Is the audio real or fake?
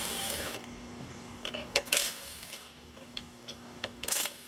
fake